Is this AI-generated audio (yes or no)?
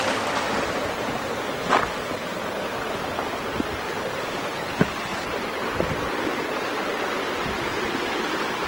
no